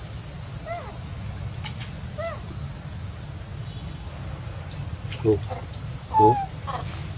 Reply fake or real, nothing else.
real